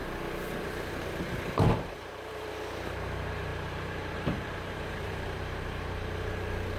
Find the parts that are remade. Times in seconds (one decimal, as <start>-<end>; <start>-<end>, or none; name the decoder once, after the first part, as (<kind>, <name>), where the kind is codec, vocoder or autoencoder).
1.5-6.8 (vocoder, BigVGAN v2)